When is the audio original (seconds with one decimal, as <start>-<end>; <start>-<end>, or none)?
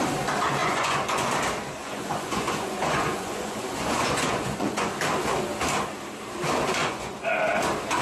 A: 0.0-0.6; 1.3-1.8; 4.9-6.8; 7.3-8.0